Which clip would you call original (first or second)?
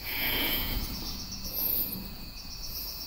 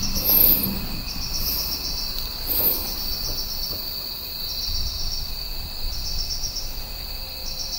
second